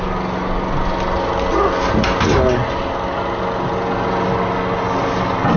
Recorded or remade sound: recorded